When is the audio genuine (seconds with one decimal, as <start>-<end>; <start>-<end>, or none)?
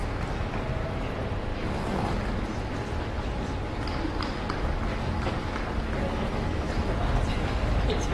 0.0-4.9; 5.5-6.1; 6.7-8.1